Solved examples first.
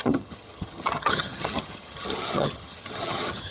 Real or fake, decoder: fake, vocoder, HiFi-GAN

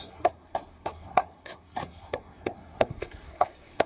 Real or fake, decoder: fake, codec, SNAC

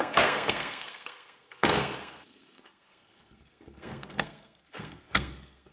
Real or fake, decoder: fake, codec, SNAC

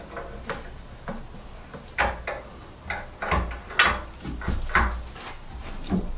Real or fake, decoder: real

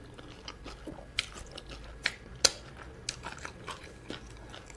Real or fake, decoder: real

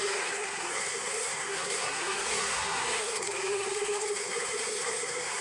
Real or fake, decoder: fake, codec, SNAC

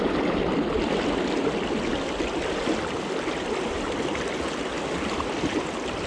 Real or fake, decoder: real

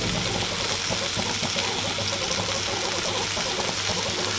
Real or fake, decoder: real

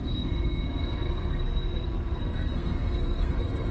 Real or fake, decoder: fake, codec, SNAC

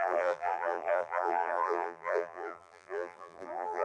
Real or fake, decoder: fake, vocoder, BigVGAN v2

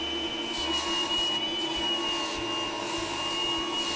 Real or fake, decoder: real